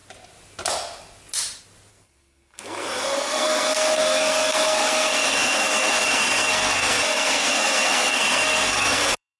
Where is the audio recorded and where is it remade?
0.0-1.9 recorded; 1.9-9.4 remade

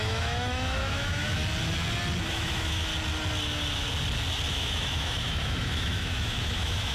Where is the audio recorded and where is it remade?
0.0-1.4 remade; 1.4-2.3 recorded; 2.3-2.9 remade; 2.9-4.5 recorded; 4.5-6.9 remade

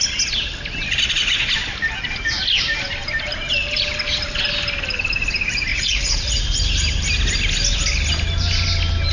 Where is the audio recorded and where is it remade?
0.0-5.7 recorded; 5.7-6.6 remade; 6.6-9.1 recorded

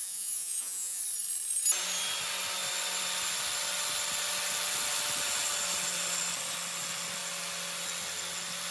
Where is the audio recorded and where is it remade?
0.0-1.0 remade; 1.0-8.7 recorded

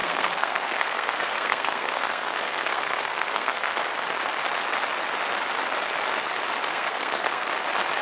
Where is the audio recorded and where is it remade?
0.0-3.8 remade; 3.8-6.7 recorded; 6.7-7.5 remade; 7.5-8.0 recorded

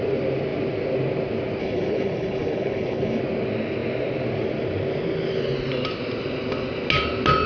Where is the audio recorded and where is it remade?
0.0-1.6 recorded; 1.6-3.2 remade; 3.2-7.5 recorded

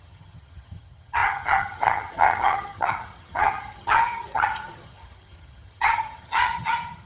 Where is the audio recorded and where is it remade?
0.0-7.1 remade